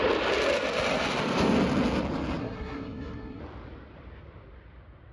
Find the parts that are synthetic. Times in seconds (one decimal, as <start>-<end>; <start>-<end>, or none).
2.4-3.4